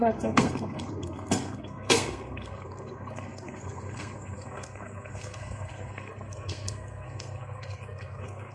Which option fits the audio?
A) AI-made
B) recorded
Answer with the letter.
A